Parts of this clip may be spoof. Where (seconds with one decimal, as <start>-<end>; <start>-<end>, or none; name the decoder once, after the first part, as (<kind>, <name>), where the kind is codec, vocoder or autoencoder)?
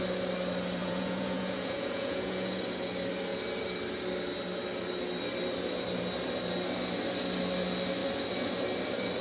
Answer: 0.8-2.6 (vocoder, Vocos)